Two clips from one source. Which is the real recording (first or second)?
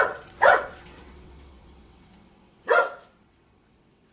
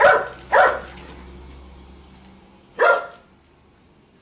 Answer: second